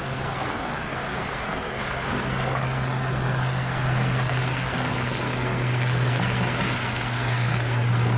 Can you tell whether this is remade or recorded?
remade